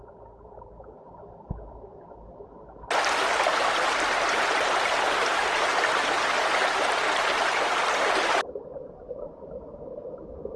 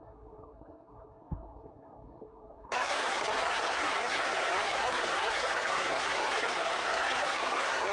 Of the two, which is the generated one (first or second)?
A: second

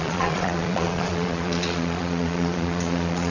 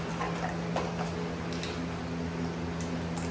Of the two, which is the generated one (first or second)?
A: first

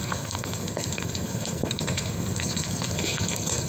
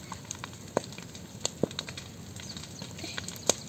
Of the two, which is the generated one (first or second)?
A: first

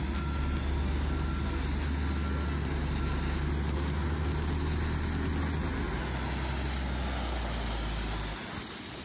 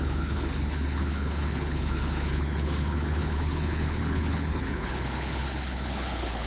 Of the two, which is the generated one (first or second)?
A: second